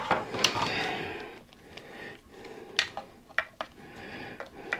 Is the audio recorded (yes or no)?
yes